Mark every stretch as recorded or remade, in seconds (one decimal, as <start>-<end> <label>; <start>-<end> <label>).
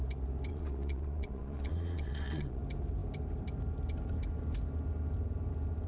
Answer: 0.0-0.5 recorded; 0.5-2.6 remade; 2.6-5.9 recorded